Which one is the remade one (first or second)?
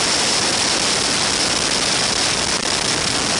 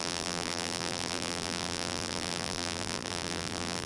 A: second